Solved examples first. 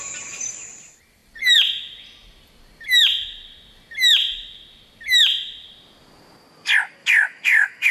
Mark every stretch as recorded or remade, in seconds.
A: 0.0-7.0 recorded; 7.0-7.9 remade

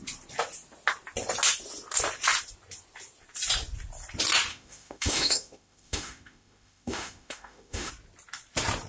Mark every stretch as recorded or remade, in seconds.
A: 0.0-4.5 recorded; 4.5-7.9 remade; 7.9-8.9 recorded

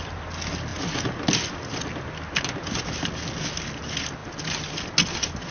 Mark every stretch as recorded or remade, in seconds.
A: 0.0-5.5 recorded

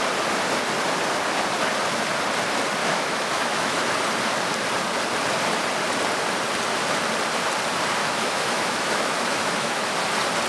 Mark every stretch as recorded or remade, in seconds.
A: 0.0-2.8 recorded; 2.8-3.8 remade; 3.8-8.0 recorded; 8.0-9.8 remade; 9.8-10.5 recorded

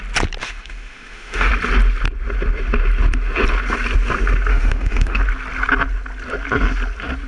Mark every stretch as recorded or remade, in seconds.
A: 0.0-0.4 recorded; 0.4-1.5 remade; 1.5-4.5 recorded; 4.5-5.2 remade; 5.2-7.3 recorded

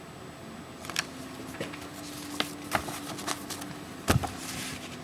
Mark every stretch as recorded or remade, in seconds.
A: 0.0-5.0 recorded

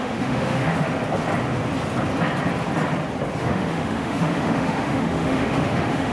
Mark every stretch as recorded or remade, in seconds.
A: 0.0-0.9 remade; 0.9-3.4 recorded; 3.4-6.1 remade